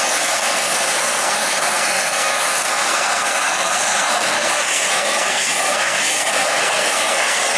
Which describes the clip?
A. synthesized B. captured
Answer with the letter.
A